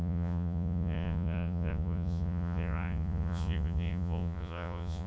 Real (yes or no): no